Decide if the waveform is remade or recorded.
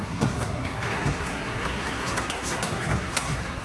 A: remade